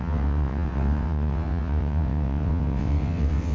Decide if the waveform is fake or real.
fake